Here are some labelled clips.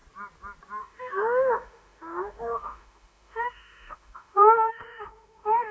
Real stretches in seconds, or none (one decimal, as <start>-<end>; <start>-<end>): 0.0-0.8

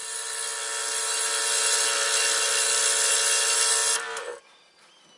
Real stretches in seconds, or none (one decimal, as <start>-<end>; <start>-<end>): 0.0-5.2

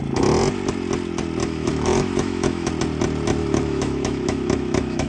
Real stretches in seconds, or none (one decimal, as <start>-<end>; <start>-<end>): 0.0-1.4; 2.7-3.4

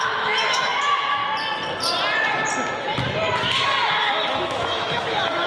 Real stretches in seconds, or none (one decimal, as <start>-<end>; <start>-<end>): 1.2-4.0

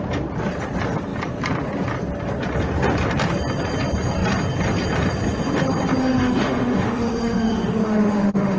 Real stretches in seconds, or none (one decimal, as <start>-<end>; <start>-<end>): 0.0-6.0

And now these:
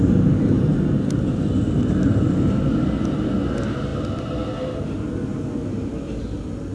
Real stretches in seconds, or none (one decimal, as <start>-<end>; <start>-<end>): 0.0-6.7

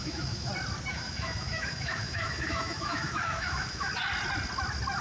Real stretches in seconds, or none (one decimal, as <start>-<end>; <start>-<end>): 0.5-0.9; 3.9-5.0